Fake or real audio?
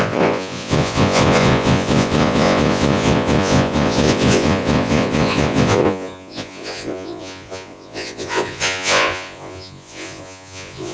fake